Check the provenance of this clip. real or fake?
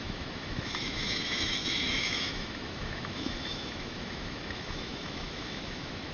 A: fake